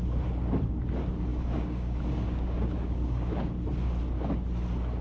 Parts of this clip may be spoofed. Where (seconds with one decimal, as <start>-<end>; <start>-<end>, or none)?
1.3-3.5